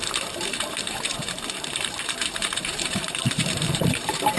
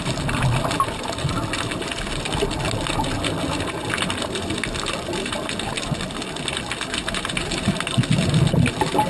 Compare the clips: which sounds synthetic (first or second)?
first